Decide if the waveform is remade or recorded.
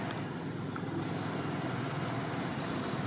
recorded